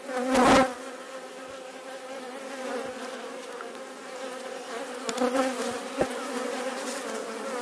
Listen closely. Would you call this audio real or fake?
real